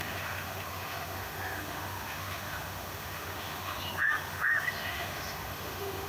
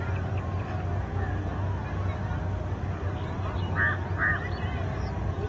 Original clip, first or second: second